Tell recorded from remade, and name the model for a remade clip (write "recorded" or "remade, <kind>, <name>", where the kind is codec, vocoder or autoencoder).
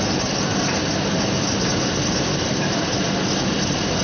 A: recorded